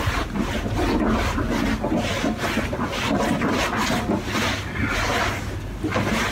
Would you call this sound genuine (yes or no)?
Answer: yes